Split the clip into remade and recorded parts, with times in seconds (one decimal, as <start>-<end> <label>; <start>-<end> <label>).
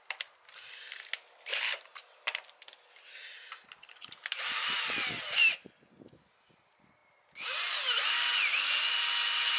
0.0-1.5 recorded; 1.5-5.1 remade; 5.1-9.6 recorded